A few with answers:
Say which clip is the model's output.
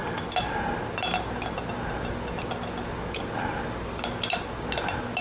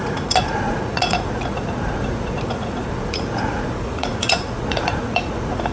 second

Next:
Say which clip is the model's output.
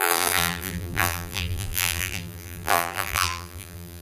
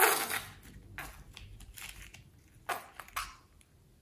first